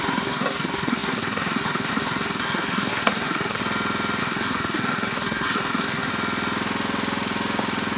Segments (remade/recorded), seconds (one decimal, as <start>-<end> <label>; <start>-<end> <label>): 0.0-3.6 remade; 3.6-4.2 recorded; 4.2-6.1 remade; 6.1-8.0 recorded